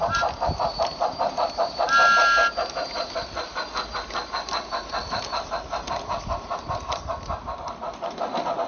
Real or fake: real